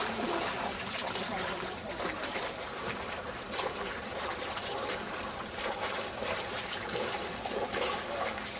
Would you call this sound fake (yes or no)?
yes